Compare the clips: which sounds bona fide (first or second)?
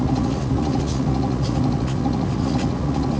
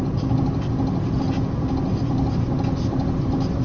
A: second